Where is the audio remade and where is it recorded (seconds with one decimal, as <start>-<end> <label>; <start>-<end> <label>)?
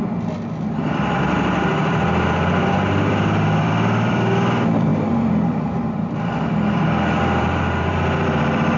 0.0-8.8 remade